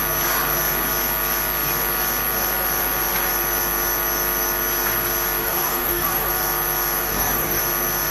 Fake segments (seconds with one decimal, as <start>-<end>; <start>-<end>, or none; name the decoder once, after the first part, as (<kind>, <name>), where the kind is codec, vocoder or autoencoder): 5.4-6.3 (codec, DAC); 7.0-7.6